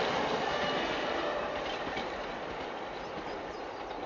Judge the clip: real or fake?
fake